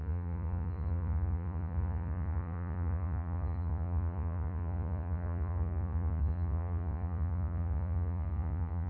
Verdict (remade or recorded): remade